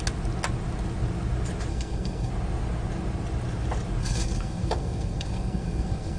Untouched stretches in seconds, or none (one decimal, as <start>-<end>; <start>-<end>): 0.0-1.7; 2.3-4.0